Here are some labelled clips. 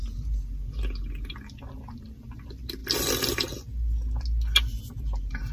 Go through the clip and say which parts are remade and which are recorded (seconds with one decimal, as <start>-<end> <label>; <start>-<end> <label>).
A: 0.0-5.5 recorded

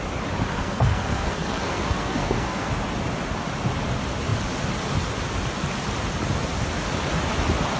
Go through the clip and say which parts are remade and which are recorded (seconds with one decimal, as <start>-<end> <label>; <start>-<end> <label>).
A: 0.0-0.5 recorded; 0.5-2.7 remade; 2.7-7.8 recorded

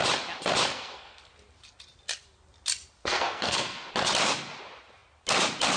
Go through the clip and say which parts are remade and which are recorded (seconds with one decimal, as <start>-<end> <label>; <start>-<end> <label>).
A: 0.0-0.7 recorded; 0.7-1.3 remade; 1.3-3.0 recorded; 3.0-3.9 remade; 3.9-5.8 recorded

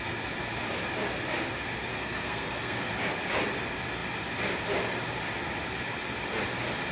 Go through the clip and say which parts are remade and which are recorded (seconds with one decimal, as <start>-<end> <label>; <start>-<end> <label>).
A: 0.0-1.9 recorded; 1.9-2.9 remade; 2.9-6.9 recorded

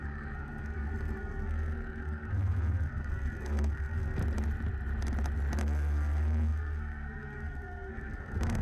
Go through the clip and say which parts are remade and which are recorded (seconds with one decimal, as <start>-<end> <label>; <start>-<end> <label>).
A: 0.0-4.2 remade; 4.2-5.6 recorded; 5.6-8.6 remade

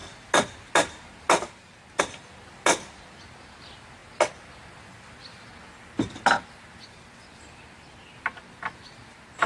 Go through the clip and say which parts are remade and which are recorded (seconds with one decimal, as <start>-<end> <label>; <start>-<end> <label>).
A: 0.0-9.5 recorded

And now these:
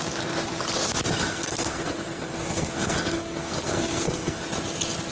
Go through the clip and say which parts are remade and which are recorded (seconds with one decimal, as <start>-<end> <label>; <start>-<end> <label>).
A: 0.0-1.3 recorded; 1.3-4.4 remade; 4.4-5.1 recorded